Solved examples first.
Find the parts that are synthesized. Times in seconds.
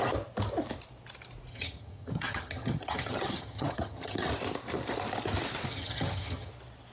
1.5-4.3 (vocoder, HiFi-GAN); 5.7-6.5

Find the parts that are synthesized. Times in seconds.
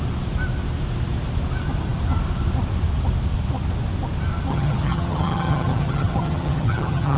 4.5-7.2 (vocoder, HiFi-GAN)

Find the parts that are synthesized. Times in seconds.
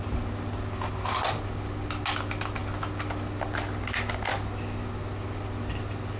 none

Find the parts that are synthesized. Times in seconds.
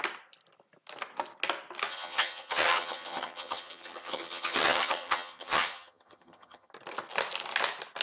1.9-6.7 (vocoder, HiFi-GAN)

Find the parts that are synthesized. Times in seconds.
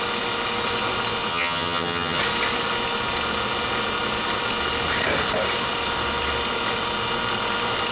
1.3-2.2 (vocoder, HiFi-GAN)